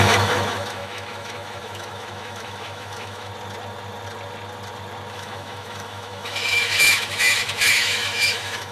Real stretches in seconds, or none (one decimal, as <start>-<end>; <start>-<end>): 3.3-5.1

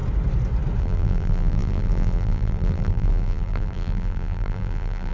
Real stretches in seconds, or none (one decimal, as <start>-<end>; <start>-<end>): 0.0-0.8

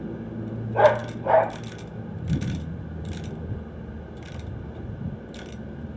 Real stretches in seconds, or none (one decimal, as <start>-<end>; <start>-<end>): 0.0-6.0

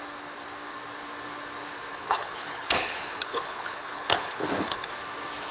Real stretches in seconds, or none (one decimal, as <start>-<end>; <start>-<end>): 0.0-1.9; 4.9-5.5

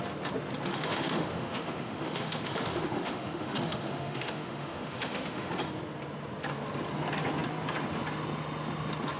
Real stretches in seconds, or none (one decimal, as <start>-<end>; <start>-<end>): 0.0-0.7; 5.5-9.2

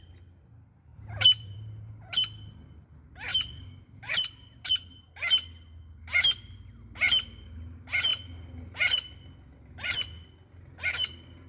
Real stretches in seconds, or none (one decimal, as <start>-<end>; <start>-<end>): 0.0-0.9; 1.9-3.3; 5.1-11.5